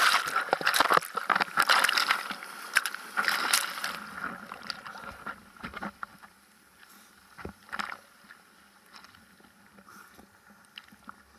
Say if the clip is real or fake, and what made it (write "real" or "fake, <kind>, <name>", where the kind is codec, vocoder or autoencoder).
real